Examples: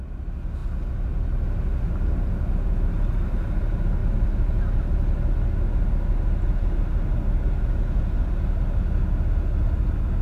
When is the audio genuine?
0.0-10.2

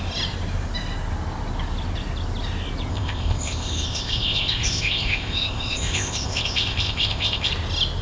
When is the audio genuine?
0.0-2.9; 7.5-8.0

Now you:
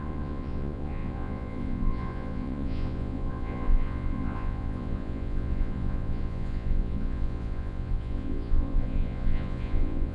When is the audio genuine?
none

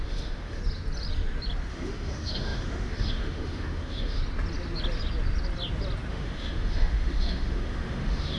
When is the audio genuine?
0.6-1.7; 4.2-6.1

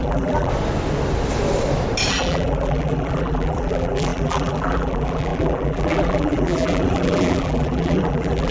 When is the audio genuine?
0.5-2.1

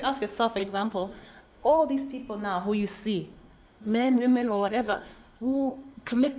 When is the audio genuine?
0.0-0.6; 1.8-3.3

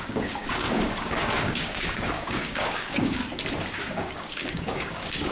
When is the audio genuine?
3.2-3.8